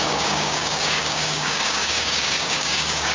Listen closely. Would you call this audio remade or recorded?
remade